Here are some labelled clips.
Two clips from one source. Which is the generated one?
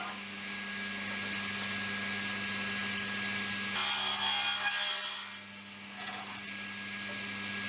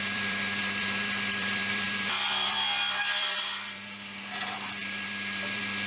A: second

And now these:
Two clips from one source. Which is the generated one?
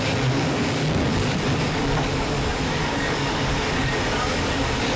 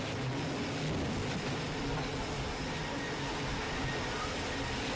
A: first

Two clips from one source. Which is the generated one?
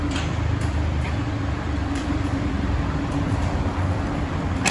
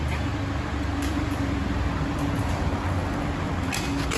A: first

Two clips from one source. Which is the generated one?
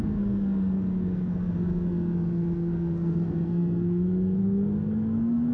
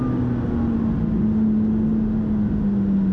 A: first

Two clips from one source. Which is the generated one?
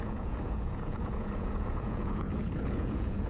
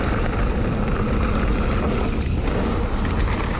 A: first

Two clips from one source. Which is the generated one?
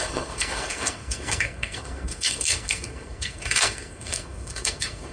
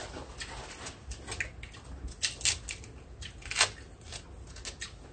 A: first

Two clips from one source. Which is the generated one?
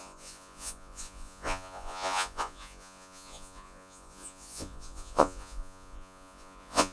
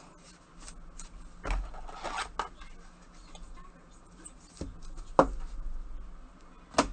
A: first